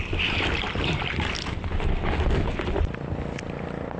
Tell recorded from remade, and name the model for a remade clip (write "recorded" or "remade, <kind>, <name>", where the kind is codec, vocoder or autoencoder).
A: recorded